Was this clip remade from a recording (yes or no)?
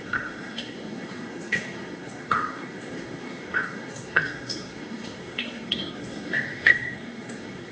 yes